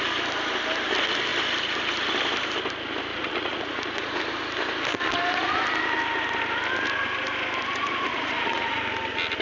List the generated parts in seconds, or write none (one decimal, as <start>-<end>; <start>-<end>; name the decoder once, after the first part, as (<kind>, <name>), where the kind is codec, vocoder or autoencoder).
3.1-4.2 (vocoder, Vocos); 7.7-8.8